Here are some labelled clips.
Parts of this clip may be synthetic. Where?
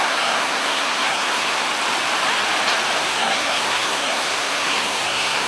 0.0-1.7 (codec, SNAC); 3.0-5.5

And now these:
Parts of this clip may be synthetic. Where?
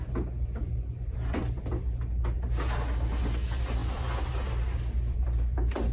none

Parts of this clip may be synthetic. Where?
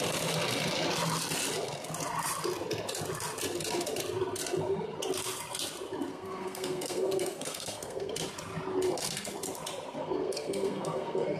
6.1-8.1 (codec, SNAC); 10.0-11.4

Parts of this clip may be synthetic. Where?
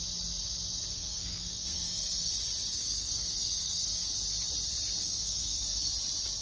0.9-2.3 (codec, SNAC); 2.7-4.1; 5.0-5.9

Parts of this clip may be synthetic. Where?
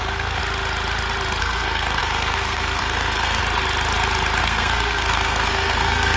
0.0-0.4 (codec, SNAC); 1.4-3.4; 4.4-6.2